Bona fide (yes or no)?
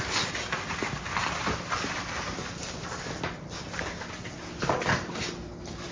yes